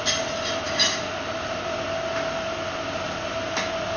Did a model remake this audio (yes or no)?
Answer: no